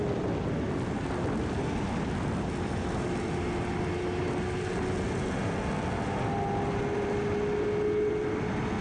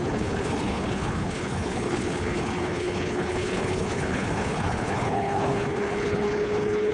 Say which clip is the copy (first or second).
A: second